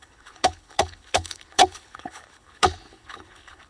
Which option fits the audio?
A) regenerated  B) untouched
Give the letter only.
A